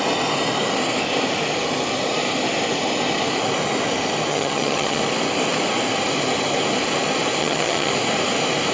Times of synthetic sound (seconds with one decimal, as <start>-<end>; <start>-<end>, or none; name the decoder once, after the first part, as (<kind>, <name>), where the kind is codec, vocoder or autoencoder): 4.3-5.0 (vocoder, HiFi-GAN); 7.4-7.9